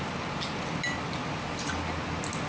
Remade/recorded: recorded